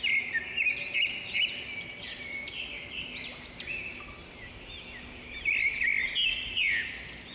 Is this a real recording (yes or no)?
yes